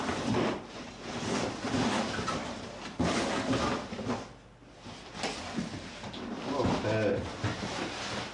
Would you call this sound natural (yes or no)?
yes